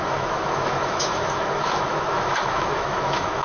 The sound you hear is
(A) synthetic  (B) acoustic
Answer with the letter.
A